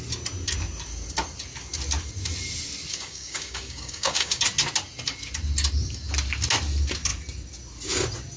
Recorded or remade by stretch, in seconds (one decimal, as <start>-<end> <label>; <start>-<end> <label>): 0.0-2.9 recorded; 2.9-4.4 remade; 4.4-8.4 recorded

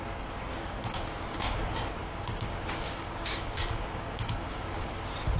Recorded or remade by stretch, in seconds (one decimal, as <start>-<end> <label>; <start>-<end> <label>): 0.0-0.5 recorded; 0.5-1.6 remade; 1.6-2.0 recorded; 2.0-4.9 remade; 4.9-5.4 recorded

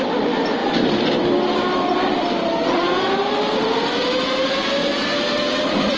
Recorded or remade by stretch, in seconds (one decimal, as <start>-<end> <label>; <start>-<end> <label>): 0.0-6.0 recorded